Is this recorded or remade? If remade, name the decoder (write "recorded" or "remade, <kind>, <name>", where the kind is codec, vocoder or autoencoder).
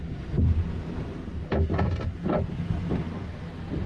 recorded